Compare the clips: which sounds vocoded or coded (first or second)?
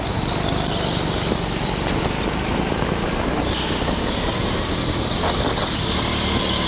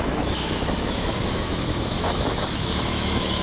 second